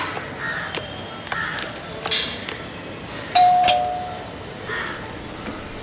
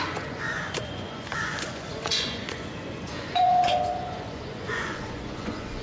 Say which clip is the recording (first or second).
first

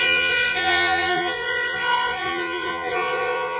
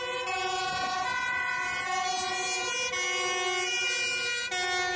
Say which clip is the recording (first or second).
second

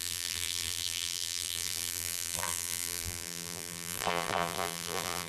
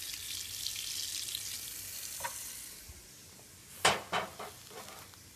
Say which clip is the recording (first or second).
second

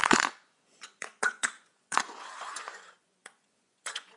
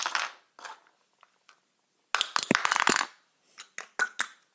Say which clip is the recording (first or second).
second